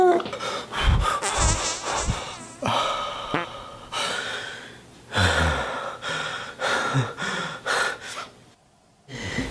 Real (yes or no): yes